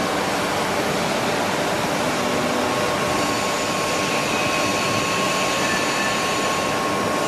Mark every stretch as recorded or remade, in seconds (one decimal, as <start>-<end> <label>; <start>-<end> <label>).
0.0-7.3 recorded